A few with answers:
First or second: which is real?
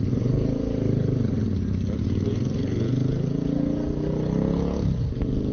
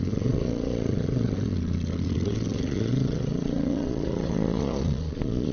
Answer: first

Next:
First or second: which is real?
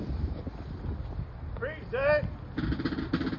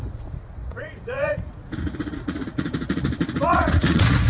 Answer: first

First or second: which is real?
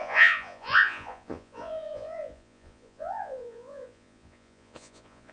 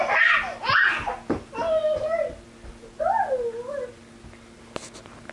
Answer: second